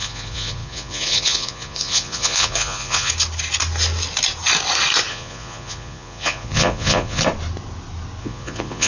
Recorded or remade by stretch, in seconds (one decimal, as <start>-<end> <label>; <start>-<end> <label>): 0.0-3.1 remade; 3.1-5.1 recorded; 5.1-7.2 remade; 7.2-8.2 recorded; 8.2-8.9 remade